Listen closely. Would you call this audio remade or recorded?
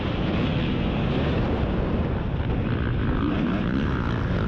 recorded